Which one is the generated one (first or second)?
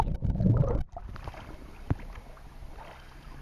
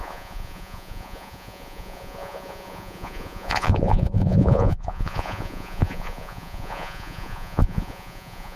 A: second